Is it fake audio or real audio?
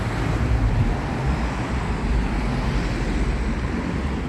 real